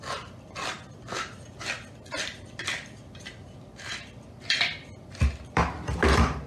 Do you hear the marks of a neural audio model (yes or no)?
no